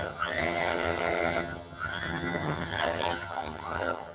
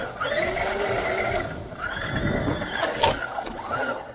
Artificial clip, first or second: first